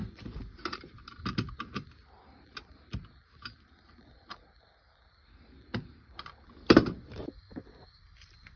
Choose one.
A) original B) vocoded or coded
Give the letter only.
A